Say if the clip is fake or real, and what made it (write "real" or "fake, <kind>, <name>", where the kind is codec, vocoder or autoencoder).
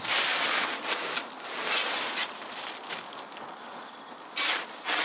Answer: real